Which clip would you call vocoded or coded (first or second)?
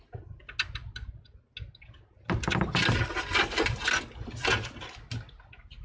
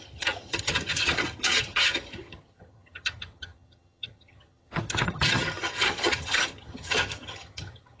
second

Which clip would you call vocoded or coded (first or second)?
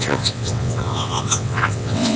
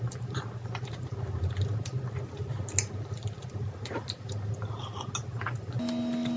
first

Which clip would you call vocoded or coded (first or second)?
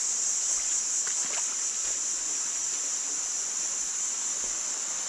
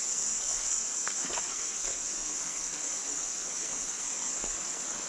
second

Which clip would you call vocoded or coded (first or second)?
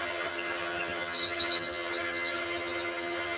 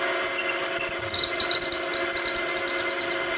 first